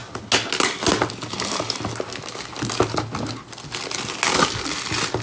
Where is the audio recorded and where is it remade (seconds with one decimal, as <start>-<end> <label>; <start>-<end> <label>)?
0.0-5.2 recorded